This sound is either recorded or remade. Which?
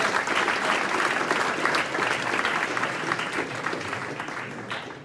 recorded